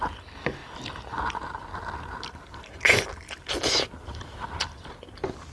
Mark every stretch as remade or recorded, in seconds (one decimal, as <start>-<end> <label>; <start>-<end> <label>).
0.0-4.0 remade; 4.0-4.6 recorded; 4.6-5.5 remade